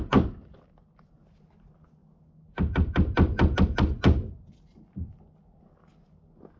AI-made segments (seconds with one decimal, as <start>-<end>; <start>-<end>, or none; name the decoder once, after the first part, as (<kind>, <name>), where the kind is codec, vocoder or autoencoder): none